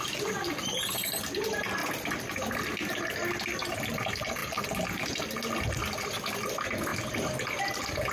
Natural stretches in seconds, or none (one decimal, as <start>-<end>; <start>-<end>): 0.0-8.1